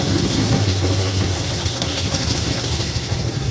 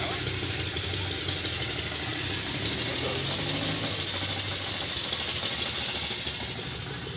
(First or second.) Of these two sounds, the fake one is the first